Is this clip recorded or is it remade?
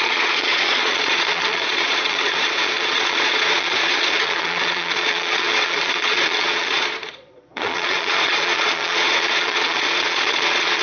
remade